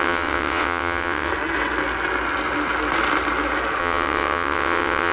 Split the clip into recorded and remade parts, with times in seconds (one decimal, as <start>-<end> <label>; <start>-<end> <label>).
0.0-1.3 remade; 1.3-3.8 recorded; 3.8-5.1 remade